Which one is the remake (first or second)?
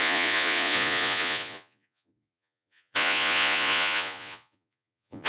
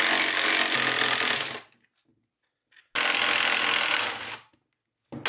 first